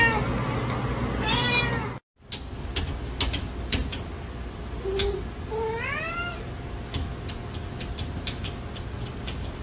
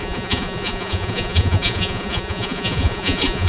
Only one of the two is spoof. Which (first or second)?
second